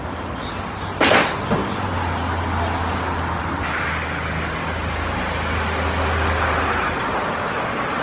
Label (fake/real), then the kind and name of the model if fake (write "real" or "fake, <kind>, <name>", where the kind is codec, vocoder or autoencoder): real